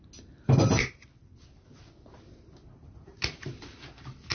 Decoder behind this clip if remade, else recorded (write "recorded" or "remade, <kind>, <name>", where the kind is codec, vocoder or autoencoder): recorded